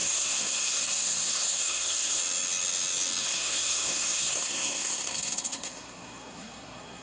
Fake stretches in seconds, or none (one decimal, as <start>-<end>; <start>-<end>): 0.0-2.2; 3.2-7.0